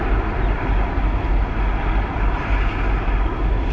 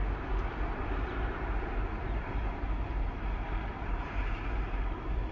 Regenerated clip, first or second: second